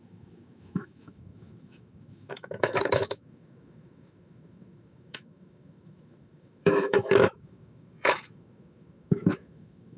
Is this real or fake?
fake